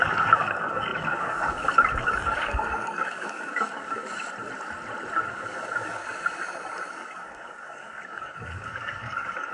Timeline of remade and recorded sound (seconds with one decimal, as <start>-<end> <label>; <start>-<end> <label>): 0.0-4.1 remade; 4.1-5.3 recorded; 5.3-6.0 remade; 6.0-6.9 recorded; 6.9-9.5 remade